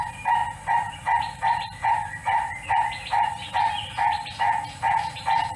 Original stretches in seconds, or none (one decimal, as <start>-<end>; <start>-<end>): 0.0-0.4; 1.4-5.6